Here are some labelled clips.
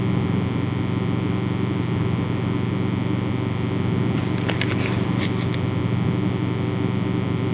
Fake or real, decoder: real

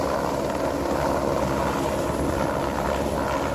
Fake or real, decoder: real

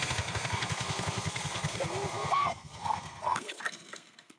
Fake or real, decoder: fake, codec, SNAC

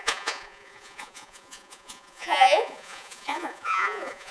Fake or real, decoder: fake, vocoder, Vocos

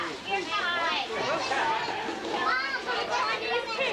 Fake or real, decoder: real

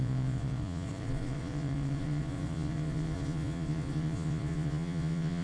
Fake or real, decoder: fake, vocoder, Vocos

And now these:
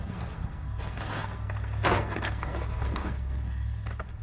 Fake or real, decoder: fake, codec, SNAC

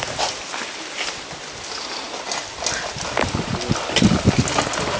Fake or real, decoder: real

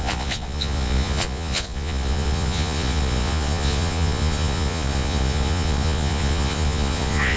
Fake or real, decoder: fake, vocoder, Vocos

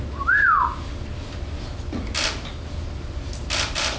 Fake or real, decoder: real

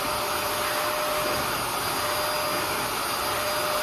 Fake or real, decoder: real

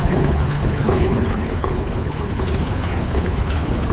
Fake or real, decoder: fake, codec, HILCodec